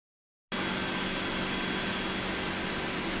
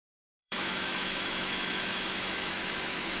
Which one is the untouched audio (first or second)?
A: first